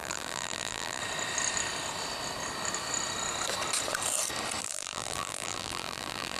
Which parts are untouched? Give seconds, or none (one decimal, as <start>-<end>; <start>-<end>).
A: 1.0-4.6